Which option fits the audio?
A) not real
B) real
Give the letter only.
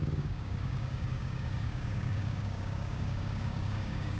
A